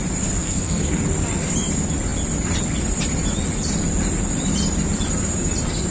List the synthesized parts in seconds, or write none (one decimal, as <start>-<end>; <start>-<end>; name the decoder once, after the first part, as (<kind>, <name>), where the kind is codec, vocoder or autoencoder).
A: 0.4-1.0 (codec, SNAC)